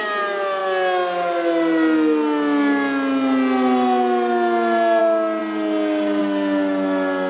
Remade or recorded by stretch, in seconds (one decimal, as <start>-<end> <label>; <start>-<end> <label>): 0.0-7.3 recorded

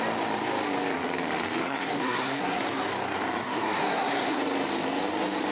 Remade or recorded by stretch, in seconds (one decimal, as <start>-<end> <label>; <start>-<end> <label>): 0.0-1.6 recorded; 1.6-2.6 remade; 2.6-3.4 recorded; 3.4-4.4 remade; 4.4-5.5 recorded

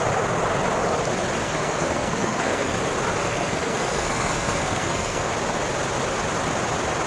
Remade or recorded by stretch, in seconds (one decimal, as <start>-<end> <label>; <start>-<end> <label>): 0.0-1.4 recorded; 1.4-2.8 remade; 2.8-3.2 recorded; 3.2-5.3 remade; 5.3-7.1 recorded

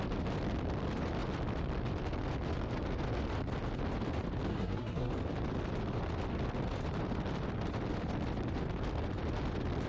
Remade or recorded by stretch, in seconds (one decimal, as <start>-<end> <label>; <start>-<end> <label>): 0.0-4.5 recorded; 4.5-5.1 remade; 5.1-9.9 recorded

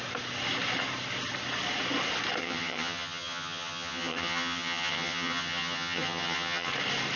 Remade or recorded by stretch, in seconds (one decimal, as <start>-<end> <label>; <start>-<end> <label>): 0.0-2.4 recorded; 2.4-6.7 remade; 6.7-7.2 recorded